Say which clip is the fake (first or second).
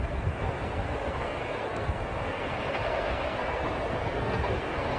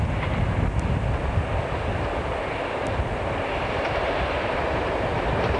first